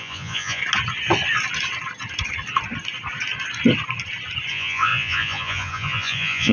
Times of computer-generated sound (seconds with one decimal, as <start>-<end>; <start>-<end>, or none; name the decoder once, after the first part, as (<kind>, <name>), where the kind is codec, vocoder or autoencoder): 0.0-0.6 (vocoder, Vocos); 4.5-6.5